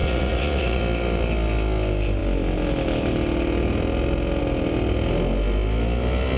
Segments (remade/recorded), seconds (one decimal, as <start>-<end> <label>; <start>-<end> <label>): 0.0-0.8 remade; 0.8-6.4 recorded